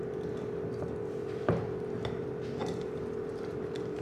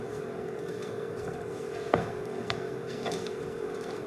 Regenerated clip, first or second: second